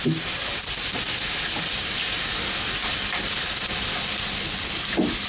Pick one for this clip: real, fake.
real